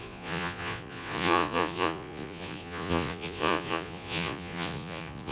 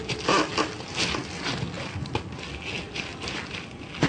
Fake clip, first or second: first